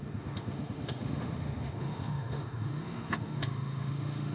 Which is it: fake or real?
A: fake